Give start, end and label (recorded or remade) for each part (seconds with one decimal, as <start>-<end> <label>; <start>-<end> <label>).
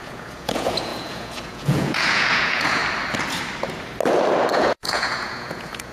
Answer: 0.0-2.8 remade; 2.8-4.5 recorded; 4.5-5.9 remade